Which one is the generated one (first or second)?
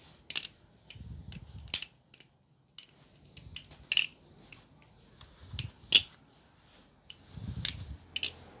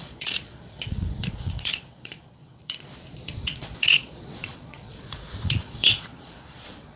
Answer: second